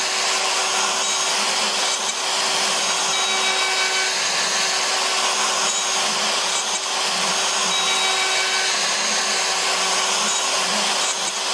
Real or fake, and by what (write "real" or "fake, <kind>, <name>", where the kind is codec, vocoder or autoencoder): real